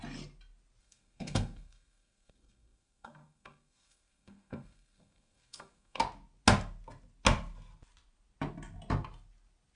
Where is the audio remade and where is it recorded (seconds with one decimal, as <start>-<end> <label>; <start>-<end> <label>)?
0.0-0.8 recorded; 0.8-6.0 remade; 6.0-9.8 recorded